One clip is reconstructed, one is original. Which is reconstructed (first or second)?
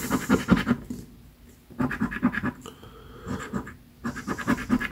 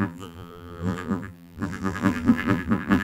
second